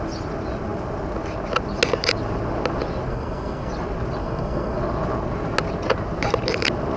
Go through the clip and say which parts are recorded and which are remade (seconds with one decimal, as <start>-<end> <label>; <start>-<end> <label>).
0.0-3.1 recorded; 3.1-3.7 remade; 3.7-4.2 recorded; 4.2-4.8 remade; 4.8-7.0 recorded

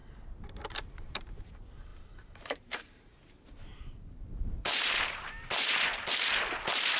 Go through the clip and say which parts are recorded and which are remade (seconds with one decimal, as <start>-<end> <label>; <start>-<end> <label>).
0.0-1.5 remade; 1.5-1.9 recorded; 1.9-6.1 remade; 6.1-7.0 recorded

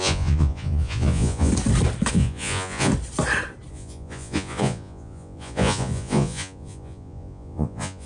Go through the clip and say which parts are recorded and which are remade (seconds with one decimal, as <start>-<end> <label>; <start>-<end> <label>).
0.0-1.5 remade; 1.5-2.1 recorded; 2.1-2.9 remade; 2.9-3.7 recorded; 3.7-8.1 remade

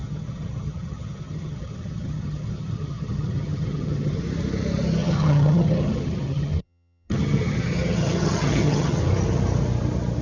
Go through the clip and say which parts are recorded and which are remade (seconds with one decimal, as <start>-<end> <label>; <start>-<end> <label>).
0.0-4.2 remade; 4.2-5.0 recorded; 5.0-9.0 remade; 9.0-10.2 recorded

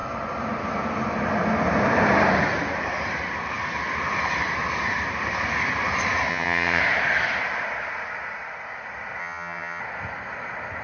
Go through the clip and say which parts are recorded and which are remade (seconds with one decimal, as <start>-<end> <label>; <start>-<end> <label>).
0.0-6.3 recorded; 6.3-6.8 remade; 6.8-9.2 recorded; 9.2-9.8 remade; 9.8-10.8 recorded

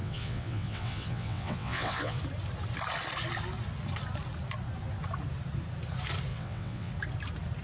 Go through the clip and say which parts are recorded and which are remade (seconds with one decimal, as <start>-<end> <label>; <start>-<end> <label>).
0.0-2.2 remade; 2.2-6.3 recorded; 6.3-6.9 remade; 6.9-7.6 recorded